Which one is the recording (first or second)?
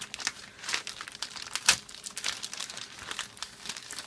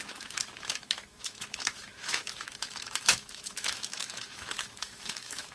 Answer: first